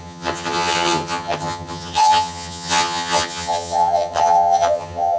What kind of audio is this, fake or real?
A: fake